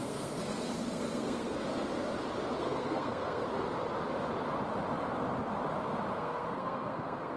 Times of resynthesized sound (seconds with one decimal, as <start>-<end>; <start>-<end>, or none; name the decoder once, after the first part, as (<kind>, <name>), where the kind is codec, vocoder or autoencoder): 0.0-1.7 (codec, SNAC); 2.6-3.5; 6.1-7.4